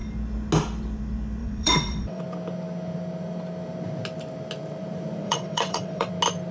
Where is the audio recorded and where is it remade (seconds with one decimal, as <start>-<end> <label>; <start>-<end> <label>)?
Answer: 0.0-1.4 recorded; 1.4-2.2 remade; 2.2-5.2 recorded; 5.2-6.1 remade; 6.1-6.5 recorded